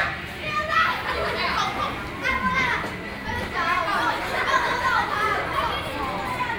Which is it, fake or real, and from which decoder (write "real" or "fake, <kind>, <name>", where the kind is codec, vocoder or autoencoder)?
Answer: real